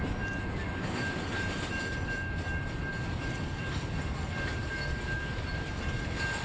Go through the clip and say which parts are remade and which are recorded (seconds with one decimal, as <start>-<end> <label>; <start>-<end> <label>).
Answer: 0.0-2.9 remade; 2.9-3.6 recorded; 3.6-6.4 remade